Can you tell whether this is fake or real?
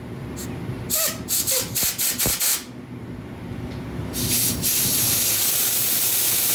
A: real